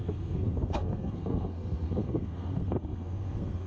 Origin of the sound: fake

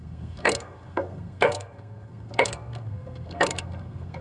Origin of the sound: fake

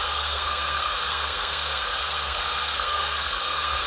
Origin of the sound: fake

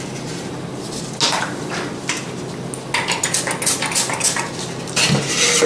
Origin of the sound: real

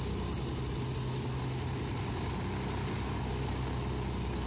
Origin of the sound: real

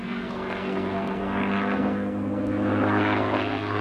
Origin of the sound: fake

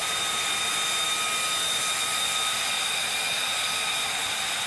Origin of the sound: real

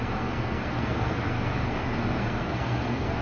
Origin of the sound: fake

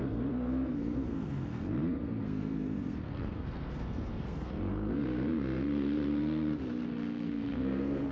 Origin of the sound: fake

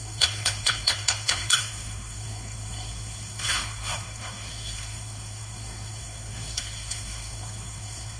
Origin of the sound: fake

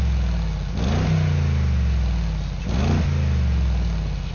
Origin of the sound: real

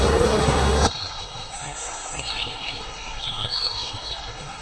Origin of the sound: fake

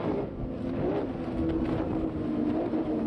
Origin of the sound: real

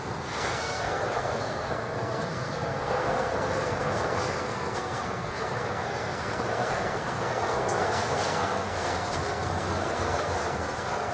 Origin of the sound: fake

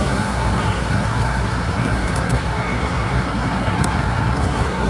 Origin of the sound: fake